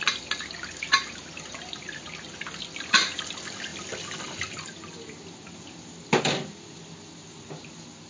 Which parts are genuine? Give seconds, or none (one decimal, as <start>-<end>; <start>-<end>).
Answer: 0.0-8.1